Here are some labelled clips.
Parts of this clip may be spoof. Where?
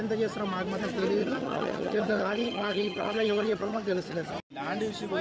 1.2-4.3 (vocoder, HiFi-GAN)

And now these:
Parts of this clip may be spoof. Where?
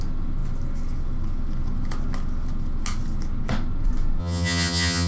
4.2-5.1 (vocoder, HiFi-GAN)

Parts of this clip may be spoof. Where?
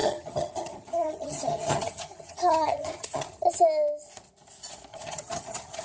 0.0-3.5 (vocoder, HiFi-GAN); 4.9-5.8